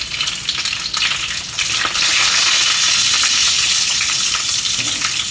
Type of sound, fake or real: real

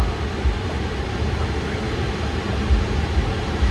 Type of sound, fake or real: real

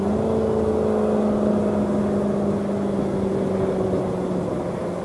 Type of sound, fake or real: real